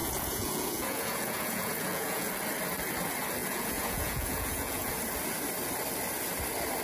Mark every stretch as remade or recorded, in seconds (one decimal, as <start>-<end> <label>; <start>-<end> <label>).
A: 0.0-2.3 remade; 2.3-3.4 recorded; 3.4-4.9 remade; 4.9-6.8 recorded